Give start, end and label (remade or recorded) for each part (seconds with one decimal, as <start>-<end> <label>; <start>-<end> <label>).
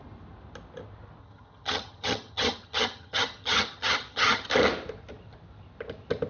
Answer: 0.0-1.2 recorded; 1.2-4.5 remade; 4.5-6.3 recorded